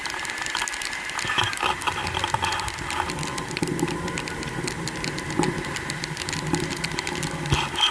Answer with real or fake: real